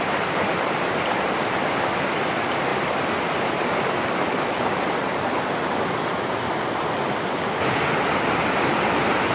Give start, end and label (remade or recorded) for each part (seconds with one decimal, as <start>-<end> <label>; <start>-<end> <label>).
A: 0.0-9.3 recorded